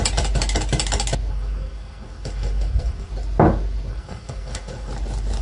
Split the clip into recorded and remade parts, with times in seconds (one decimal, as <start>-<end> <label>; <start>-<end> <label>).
0.0-1.3 recorded; 1.3-3.1 remade; 3.1-3.9 recorded; 3.9-4.9 remade; 4.9-5.4 recorded